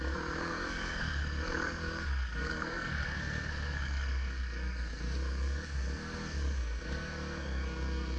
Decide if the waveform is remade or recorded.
remade